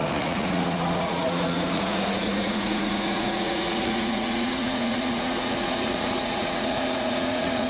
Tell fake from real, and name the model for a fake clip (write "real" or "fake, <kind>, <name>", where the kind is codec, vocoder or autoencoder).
fake, vocoder, Vocos